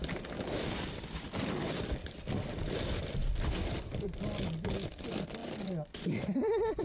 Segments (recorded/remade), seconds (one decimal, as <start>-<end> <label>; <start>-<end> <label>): 0.0-4.1 remade; 4.1-5.4 recorded; 5.4-6.8 remade